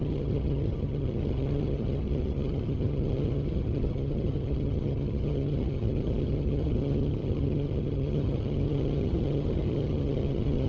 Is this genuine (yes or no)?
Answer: no